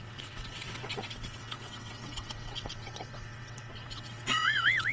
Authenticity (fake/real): fake